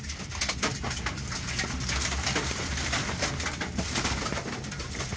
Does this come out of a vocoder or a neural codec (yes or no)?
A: yes